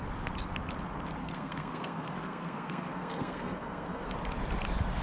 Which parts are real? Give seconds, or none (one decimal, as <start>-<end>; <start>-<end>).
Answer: 0.0-1.2; 4.1-5.0